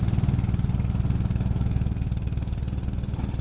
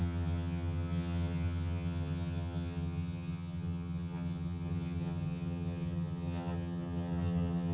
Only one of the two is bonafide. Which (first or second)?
first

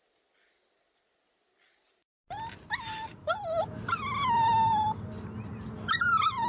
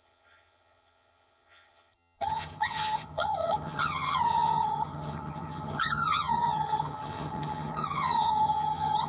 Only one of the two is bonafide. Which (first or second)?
first